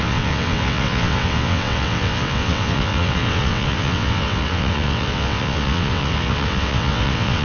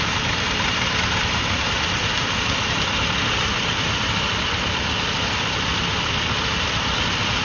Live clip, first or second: second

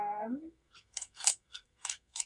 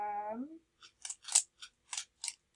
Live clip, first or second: second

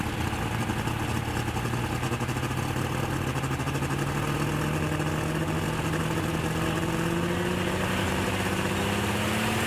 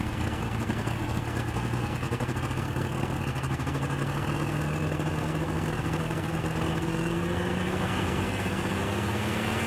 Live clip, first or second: first